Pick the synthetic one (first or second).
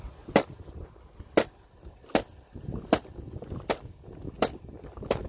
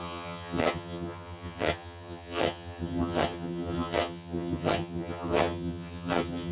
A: second